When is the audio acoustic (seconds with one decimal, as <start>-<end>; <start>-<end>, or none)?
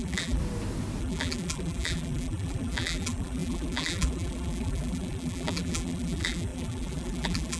0.4-1.0